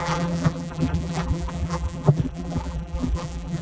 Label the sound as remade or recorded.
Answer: remade